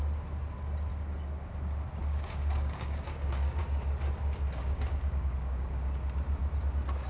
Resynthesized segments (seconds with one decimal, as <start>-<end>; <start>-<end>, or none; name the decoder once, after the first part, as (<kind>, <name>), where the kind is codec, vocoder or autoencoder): 0.9-1.5 (codec, DAC); 2.0-3.6; 4.6-5.9